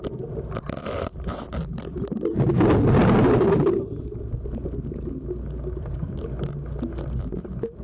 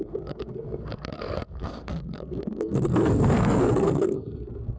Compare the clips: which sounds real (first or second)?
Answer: first